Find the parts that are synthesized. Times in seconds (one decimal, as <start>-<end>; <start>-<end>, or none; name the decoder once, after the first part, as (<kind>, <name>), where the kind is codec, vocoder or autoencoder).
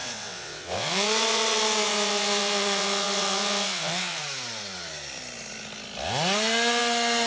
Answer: 0.0-4.2 (vocoder, WaveNeXt)